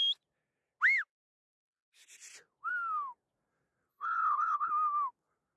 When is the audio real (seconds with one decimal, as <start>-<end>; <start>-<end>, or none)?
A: 0.0-3.9; 4.7-5.6